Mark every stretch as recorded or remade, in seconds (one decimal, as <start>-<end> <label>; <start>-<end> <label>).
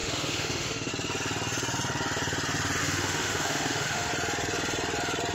0.0-0.9 remade; 0.9-2.8 recorded; 2.8-4.1 remade; 4.1-5.3 recorded